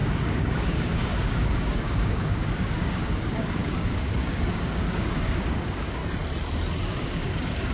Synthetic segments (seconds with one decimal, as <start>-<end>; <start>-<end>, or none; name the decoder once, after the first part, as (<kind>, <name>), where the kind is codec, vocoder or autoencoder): 0.0-6.0 (codec, DAC); 6.8-7.7